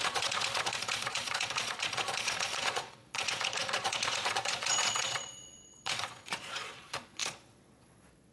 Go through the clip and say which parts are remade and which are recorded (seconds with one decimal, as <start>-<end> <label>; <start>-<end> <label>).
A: 0.0-8.3 remade